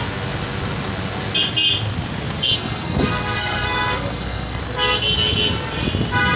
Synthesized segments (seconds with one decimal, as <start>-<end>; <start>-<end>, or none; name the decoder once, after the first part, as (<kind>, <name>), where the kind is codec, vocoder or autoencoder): 2.4-4.6 (codec, SNAC)